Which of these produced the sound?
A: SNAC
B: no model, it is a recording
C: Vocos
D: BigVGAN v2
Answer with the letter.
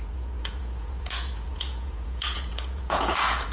C